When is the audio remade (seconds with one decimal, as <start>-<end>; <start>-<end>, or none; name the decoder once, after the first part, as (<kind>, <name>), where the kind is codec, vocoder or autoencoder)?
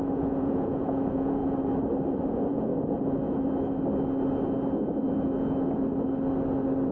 0.0-1.4 (vocoder, Vocos); 2.3-2.7